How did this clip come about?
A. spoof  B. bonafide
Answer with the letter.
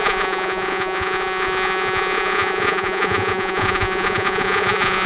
A